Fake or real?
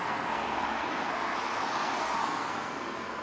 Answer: fake